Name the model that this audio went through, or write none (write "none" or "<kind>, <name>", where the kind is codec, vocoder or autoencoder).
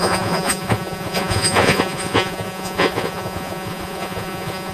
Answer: vocoder, Vocos